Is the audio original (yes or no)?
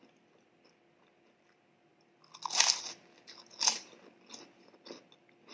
yes